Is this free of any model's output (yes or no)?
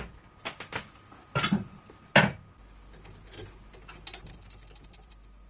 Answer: yes